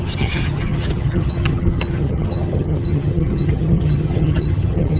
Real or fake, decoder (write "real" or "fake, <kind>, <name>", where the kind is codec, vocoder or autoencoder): fake, vocoder, HiFi-GAN